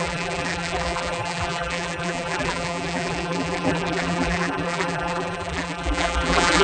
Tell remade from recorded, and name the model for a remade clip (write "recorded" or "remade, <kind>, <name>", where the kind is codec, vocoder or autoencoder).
remade, vocoder, BigVGAN v2